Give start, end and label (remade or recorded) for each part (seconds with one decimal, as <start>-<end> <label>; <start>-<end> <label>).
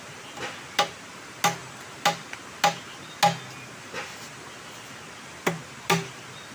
0.0-6.5 recorded